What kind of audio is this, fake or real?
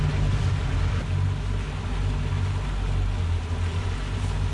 real